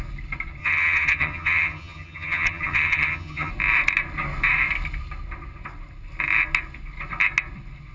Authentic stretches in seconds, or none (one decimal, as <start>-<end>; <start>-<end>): 0.0-0.6; 3.5-7.9